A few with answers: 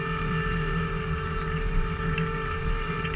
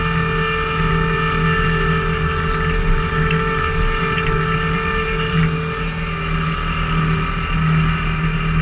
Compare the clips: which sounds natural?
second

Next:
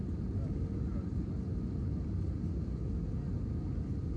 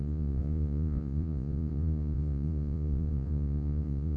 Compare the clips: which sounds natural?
first